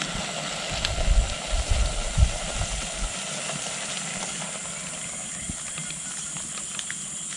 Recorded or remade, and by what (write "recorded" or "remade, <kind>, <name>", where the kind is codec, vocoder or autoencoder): recorded